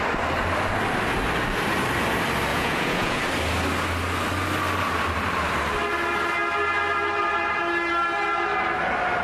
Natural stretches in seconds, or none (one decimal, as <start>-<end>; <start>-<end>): 0.0-2.5; 3.2-9.2